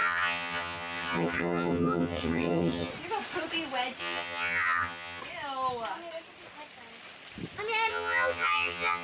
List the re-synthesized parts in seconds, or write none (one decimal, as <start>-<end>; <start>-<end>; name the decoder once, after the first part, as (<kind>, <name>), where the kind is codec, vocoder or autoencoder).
0.0-2.9 (vocoder, HiFi-GAN); 4.0-5.2; 7.9-9.0